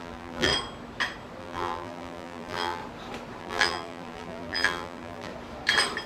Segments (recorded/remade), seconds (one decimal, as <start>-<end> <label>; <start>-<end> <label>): 0.0-0.5 remade; 0.5-1.4 recorded; 1.4-2.8 remade; 2.8-3.4 recorded; 3.4-5.3 remade; 5.3-6.1 recorded